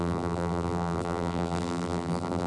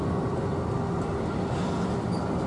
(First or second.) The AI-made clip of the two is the first